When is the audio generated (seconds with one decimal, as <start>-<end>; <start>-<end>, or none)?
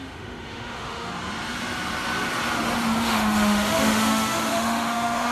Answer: 0.0-1.1; 3.0-5.3